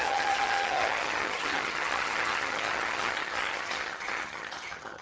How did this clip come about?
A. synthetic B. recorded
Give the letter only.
A